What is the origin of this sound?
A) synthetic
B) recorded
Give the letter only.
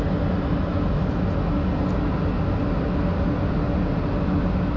B